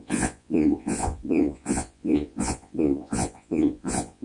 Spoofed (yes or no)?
yes